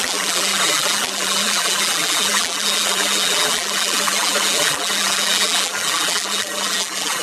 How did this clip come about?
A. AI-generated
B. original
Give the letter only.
A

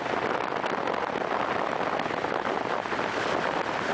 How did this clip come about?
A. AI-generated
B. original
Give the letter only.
B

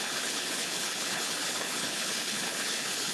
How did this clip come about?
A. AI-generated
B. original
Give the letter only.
A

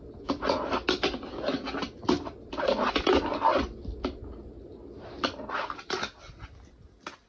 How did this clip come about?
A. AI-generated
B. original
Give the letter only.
B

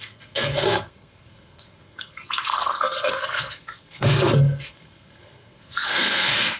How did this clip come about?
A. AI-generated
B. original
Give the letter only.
A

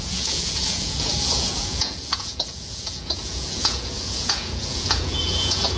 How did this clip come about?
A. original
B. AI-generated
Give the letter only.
B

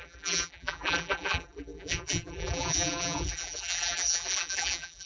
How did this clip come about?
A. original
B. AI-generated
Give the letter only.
B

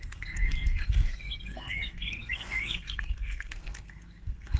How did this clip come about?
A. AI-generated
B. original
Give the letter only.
A